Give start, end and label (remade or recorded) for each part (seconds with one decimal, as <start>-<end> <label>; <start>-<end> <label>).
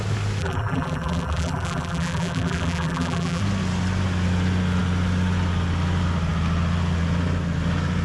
0.0-0.4 recorded; 0.4-3.4 remade; 3.4-8.0 recorded